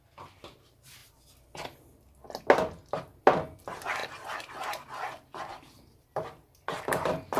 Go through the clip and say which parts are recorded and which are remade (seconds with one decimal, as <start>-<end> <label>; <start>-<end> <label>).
0.0-5.5 recorded; 5.5-7.4 remade